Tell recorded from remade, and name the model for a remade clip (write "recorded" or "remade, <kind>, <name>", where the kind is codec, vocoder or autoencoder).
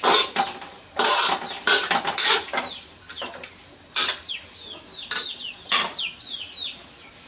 recorded